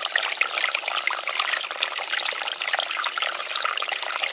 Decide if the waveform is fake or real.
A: real